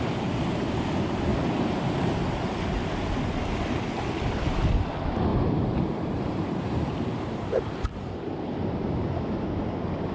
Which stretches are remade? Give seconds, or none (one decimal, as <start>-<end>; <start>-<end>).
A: 5.3-7.7